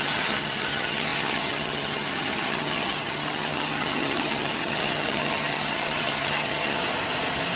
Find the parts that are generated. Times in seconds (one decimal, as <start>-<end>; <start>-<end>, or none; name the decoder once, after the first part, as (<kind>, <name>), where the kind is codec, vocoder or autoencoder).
0.0-6.8 (vocoder, HiFi-GAN)